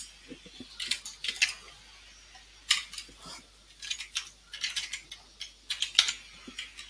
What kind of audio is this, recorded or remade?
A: recorded